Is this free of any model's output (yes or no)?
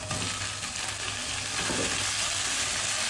yes